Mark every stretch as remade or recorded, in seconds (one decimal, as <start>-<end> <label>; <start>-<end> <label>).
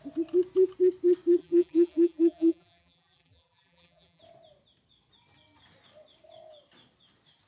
0.0-1.4 recorded; 1.4-4.2 remade; 4.2-7.5 recorded